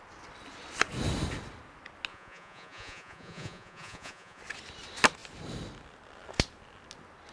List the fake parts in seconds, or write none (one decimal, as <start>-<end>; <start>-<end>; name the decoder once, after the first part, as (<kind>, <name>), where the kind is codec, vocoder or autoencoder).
2.1-4.4 (vocoder, Vocos)